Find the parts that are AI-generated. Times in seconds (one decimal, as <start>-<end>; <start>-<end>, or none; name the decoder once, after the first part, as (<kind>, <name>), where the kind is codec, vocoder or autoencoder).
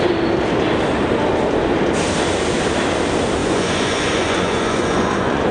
3.4-5.5 (vocoder, Vocos)